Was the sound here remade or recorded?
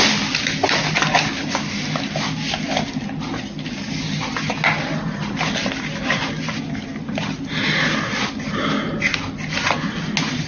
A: recorded